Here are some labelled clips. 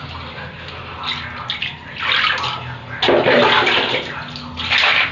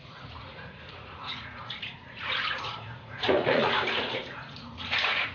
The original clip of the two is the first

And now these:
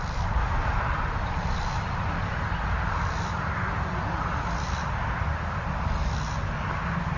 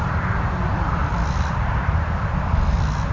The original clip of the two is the first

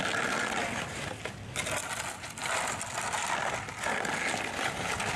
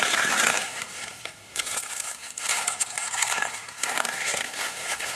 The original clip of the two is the first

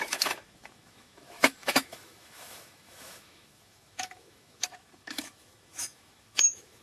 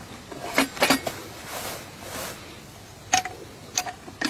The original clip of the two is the second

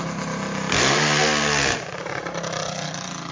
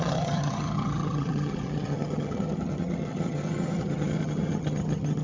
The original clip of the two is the first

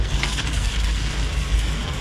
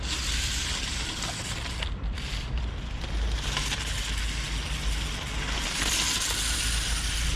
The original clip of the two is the second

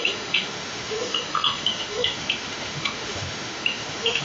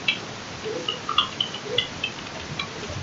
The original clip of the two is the second